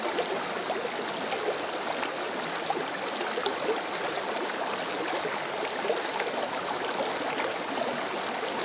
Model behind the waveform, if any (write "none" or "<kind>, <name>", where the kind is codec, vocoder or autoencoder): none